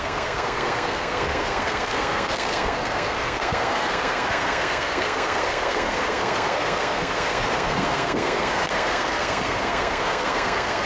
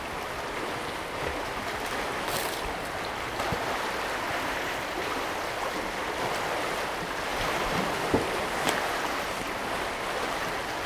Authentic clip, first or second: second